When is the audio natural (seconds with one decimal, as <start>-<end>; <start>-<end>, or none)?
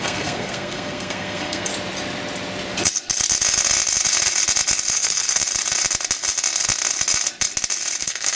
1.7-4.9; 5.4-8.0